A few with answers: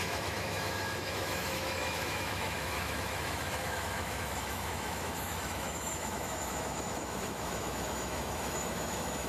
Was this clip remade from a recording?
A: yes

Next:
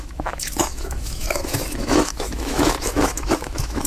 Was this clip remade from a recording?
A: yes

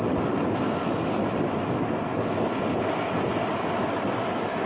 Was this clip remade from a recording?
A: no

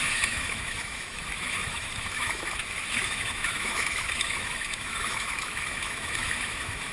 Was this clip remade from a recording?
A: yes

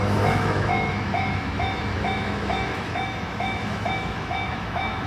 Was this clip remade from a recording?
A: yes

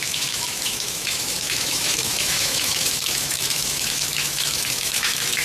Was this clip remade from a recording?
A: yes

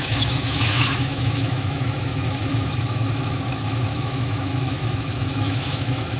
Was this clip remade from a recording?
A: yes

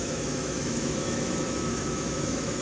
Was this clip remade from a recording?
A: yes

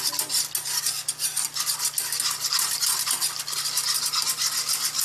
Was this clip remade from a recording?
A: no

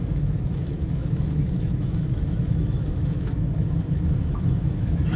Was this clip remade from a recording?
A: yes